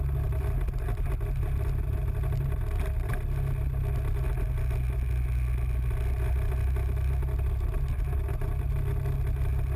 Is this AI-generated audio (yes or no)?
no